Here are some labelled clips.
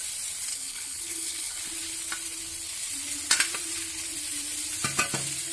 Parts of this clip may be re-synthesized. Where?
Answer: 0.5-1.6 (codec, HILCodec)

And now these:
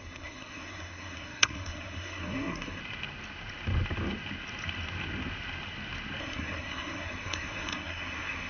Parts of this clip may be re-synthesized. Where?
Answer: 0.0-2.8 (codec, SNAC); 6.2-8.5

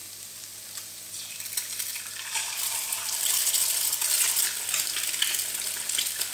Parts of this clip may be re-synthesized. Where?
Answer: none

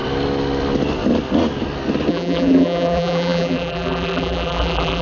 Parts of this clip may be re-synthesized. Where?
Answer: 2.1-5.0 (vocoder, BigVGAN v2)

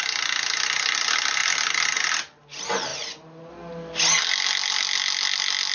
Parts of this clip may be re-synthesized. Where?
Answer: 2.9-3.5 (vocoder, BigVGAN v2)

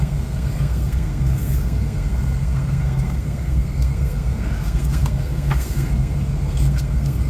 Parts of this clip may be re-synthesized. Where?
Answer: 0.0-7.3 (codec, SNAC)

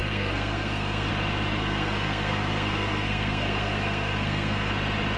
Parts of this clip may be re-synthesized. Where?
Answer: 0.0-1.1 (codec, SNAC); 1.6-4.7